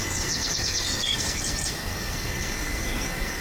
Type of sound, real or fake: fake